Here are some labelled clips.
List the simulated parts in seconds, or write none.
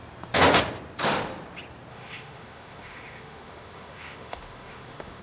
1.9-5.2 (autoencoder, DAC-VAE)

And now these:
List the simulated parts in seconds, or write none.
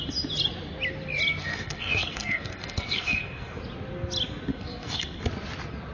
1.4-3.6 (codec, SNAC); 4.5-5.2